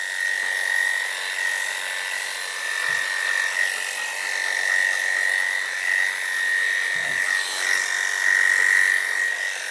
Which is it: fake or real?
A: real